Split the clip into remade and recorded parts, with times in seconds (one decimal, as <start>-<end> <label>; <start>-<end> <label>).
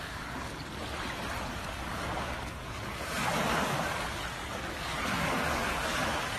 0.0-0.5 remade; 0.5-1.5 recorded; 1.5-6.4 remade